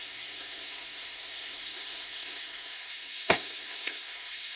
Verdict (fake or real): fake